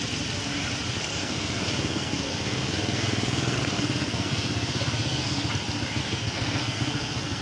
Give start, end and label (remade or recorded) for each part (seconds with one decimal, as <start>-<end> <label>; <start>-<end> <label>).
0.0-1.1 recorded; 1.1-5.5 remade; 5.5-6.0 recorded; 6.0-7.4 remade